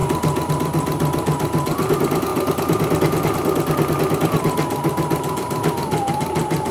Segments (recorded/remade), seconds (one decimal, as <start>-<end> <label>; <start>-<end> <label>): 0.0-6.7 recorded